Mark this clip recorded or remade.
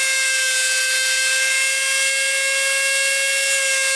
recorded